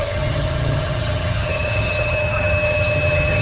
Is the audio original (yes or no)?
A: no